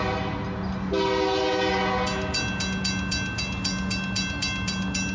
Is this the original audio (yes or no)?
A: yes